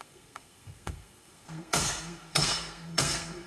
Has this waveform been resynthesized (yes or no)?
yes